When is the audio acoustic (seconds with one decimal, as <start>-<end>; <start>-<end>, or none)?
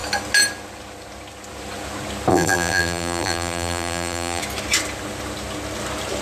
0.0-2.3; 4.4-6.2